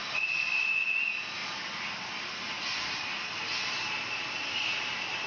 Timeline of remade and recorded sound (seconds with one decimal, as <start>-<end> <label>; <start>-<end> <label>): 0.0-0.6 remade; 0.6-5.3 recorded